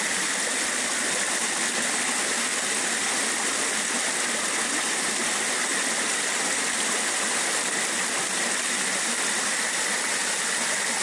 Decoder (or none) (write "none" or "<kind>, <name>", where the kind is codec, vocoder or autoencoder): none